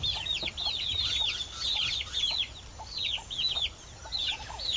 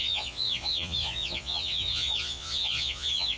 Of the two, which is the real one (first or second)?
first